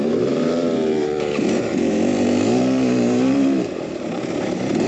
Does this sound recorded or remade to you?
remade